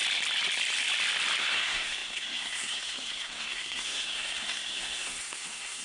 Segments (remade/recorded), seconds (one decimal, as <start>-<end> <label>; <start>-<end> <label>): 0.0-1.4 recorded; 1.4-5.8 remade

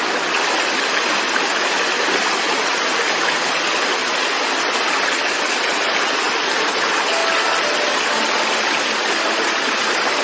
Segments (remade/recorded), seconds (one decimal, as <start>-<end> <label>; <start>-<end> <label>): 0.0-10.2 recorded

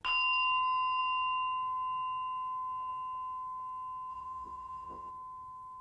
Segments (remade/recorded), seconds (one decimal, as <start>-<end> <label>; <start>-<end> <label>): 0.0-4.1 recorded; 4.1-5.1 remade; 5.1-5.8 recorded